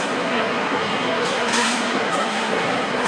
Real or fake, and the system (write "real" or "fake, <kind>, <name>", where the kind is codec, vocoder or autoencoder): fake, codec, SNAC